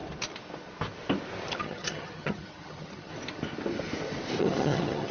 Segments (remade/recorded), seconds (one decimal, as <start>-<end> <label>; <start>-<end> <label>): 0.0-1.6 recorded; 1.6-3.1 remade; 3.1-4.4 recorded; 4.4-5.1 remade